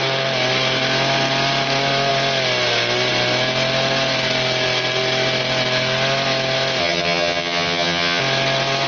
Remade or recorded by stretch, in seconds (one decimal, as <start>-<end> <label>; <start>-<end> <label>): 0.0-6.8 recorded; 6.8-8.2 remade; 8.2-8.9 recorded